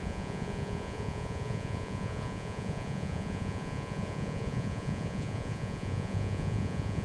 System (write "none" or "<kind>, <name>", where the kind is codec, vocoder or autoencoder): vocoder, Vocos